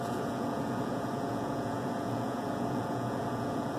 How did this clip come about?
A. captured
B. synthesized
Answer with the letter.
B